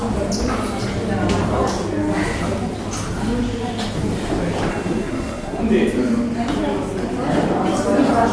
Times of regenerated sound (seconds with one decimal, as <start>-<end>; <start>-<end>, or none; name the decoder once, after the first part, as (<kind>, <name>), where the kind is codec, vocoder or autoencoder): 4.7-5.6 (codec, SNAC)